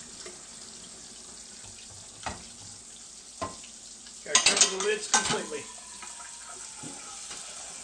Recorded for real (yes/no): yes